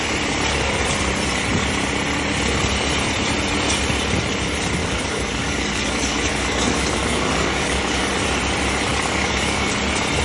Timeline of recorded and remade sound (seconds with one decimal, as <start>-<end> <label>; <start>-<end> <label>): 0.0-4.8 recorded; 4.8-8.0 remade; 8.0-8.9 recorded; 8.9-9.7 remade; 9.7-10.2 recorded